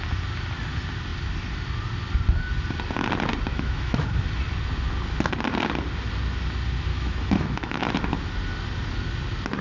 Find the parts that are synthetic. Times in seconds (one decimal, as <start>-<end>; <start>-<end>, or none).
3.5-4.2; 6.9-7.8